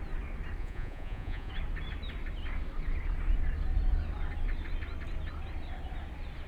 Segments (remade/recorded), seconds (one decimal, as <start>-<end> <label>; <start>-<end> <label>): 0.0-0.6 recorded; 0.6-1.5 remade; 1.5-6.5 recorded